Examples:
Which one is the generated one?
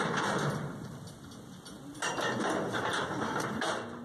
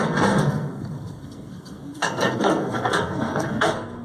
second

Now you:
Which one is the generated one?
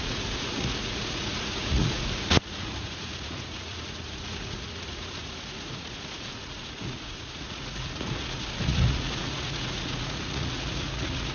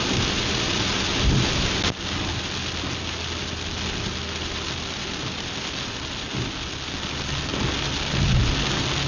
first